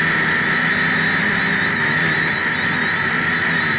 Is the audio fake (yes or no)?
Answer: no